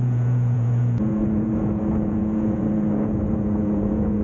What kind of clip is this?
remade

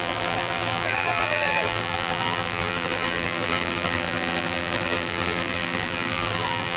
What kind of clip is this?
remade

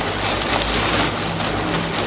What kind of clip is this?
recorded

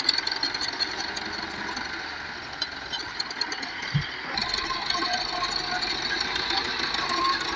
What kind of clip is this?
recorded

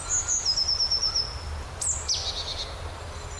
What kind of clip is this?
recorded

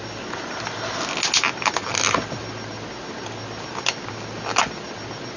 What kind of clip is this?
recorded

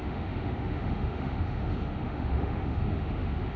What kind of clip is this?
remade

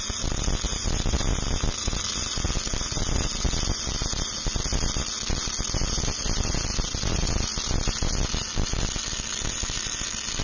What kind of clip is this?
recorded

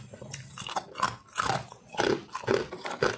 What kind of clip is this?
recorded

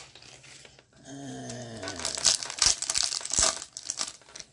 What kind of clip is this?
recorded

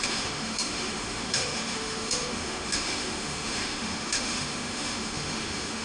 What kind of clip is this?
remade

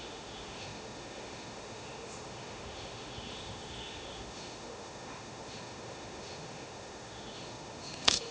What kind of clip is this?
remade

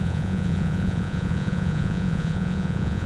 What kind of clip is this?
remade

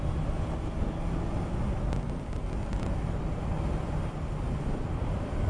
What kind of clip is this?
recorded